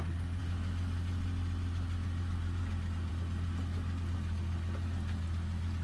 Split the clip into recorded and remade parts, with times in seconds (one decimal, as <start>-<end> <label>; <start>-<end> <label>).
0.0-5.8 recorded

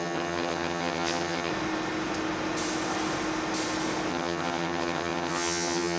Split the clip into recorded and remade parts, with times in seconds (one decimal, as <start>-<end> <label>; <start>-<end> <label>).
0.0-1.5 remade; 1.5-4.1 recorded; 4.1-6.0 remade

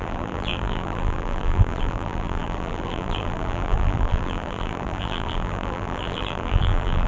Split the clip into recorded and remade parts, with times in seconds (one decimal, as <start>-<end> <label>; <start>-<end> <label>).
0.0-7.1 remade

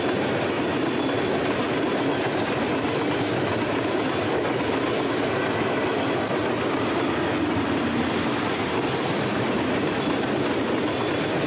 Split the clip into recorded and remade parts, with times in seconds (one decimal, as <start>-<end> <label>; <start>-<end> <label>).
0.0-11.5 recorded

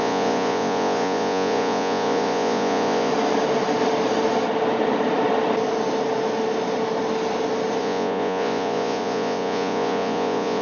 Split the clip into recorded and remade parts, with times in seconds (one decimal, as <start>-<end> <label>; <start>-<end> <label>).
0.0-3.1 remade; 3.1-7.8 recorded; 7.8-10.6 remade

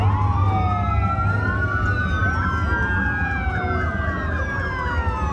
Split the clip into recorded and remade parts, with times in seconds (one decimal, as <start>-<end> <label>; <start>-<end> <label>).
0.0-5.3 recorded

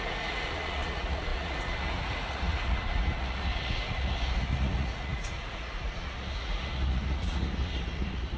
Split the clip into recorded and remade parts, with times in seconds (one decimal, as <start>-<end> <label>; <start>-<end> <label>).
0.0-8.4 remade

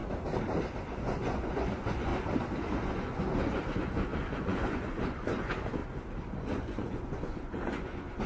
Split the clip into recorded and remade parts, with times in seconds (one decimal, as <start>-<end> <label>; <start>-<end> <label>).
0.0-0.8 recorded; 0.8-2.1 remade; 2.1-2.7 recorded; 2.7-5.8 remade; 5.8-6.4 recorded; 6.4-8.3 remade